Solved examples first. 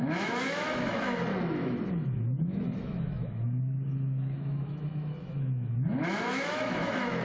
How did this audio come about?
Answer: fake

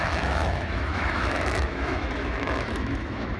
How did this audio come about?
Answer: fake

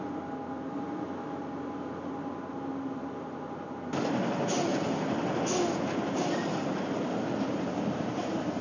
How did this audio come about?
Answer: real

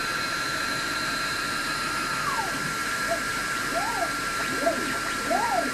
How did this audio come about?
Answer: fake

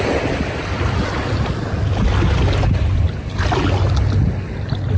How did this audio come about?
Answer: real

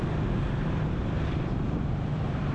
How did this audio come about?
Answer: fake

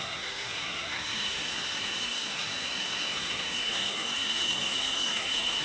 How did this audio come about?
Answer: fake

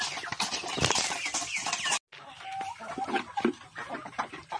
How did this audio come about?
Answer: real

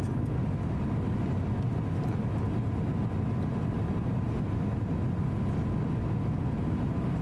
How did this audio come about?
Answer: real